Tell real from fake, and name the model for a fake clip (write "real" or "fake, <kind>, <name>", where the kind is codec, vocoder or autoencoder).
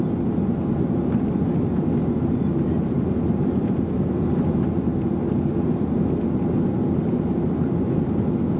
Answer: real